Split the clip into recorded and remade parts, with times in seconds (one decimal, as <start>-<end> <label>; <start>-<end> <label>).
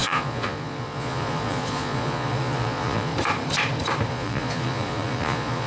0.0-3.1 remade; 3.1-4.1 recorded; 4.1-5.7 remade